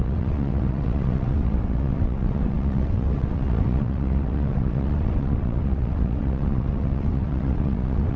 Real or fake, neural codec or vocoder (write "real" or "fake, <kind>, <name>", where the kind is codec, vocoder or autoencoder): fake, vocoder, WaveNeXt